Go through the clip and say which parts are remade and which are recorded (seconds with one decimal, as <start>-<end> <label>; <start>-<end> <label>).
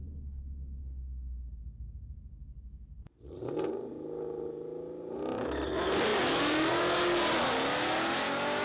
0.0-8.6 recorded